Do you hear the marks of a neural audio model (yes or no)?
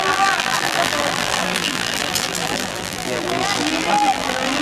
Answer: yes